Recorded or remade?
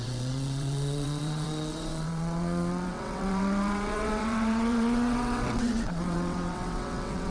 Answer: remade